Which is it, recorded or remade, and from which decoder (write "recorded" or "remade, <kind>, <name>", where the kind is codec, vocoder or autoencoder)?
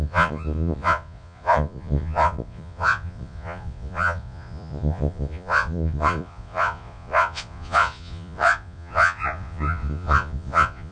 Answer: remade, vocoder, Vocos